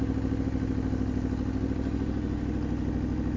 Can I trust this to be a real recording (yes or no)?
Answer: yes